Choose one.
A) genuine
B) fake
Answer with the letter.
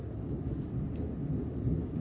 A